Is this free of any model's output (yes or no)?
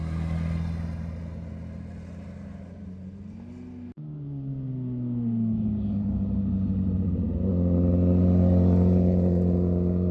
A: yes